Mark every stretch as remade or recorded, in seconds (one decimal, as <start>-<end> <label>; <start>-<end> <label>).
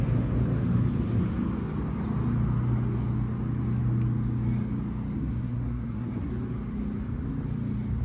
0.0-5.2 recorded; 5.2-6.3 remade; 6.3-8.0 recorded